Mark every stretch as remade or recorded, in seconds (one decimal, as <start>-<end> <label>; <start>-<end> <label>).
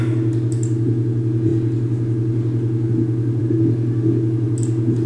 0.0-5.1 recorded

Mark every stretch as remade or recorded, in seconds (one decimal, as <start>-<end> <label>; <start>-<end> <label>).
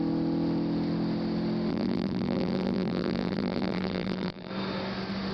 0.0-1.7 recorded; 1.7-4.5 remade; 4.5-5.3 recorded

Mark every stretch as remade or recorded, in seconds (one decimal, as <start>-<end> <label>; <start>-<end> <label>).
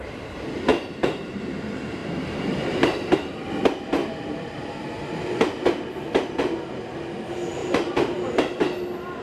0.0-0.7 recorded; 0.7-1.6 remade; 1.6-2.0 recorded; 2.0-3.5 remade; 3.5-4.0 recorded; 4.0-5.1 remade; 5.1-7.6 recorded; 7.6-8.2 remade; 8.2-9.2 recorded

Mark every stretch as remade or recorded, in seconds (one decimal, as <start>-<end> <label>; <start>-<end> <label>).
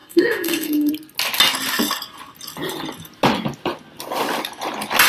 0.0-0.9 remade; 0.9-5.1 recorded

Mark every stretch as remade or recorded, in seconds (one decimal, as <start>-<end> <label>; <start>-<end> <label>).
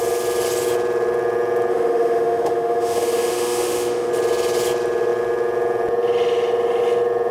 0.0-1.7 recorded; 1.7-4.1 remade; 4.1-7.3 recorded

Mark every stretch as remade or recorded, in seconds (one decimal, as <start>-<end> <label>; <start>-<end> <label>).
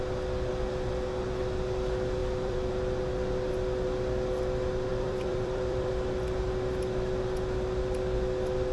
0.0-2.2 recorded; 2.2-2.7 remade; 2.7-4.9 recorded; 4.9-5.9 remade; 5.9-8.7 recorded